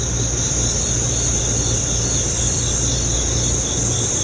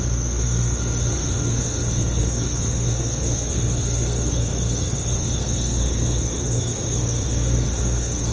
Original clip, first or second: first